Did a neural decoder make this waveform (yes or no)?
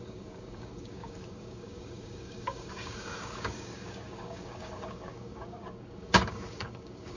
yes